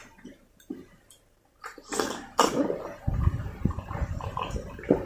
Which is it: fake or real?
fake